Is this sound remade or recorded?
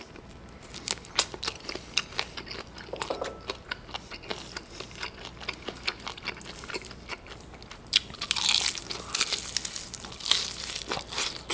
recorded